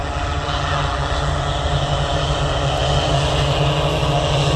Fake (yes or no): no